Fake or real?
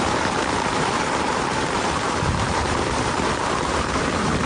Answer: fake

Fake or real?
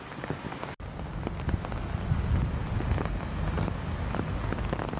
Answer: real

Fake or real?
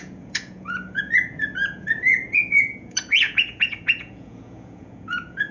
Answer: fake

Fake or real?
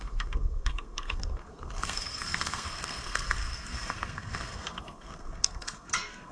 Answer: fake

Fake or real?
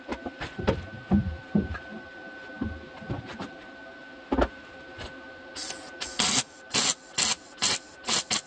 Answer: real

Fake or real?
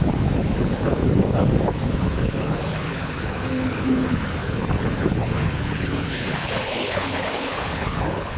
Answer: fake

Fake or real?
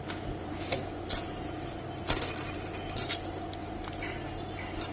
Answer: real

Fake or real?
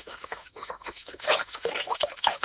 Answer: fake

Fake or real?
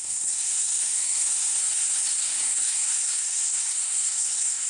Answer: fake